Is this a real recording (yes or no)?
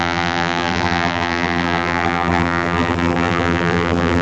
no